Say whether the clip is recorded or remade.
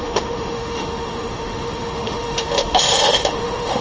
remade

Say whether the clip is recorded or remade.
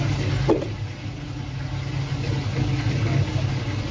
recorded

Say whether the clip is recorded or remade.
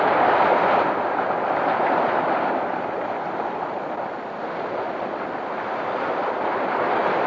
recorded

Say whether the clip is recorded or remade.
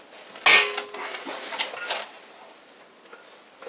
recorded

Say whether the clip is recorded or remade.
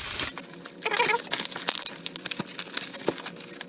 recorded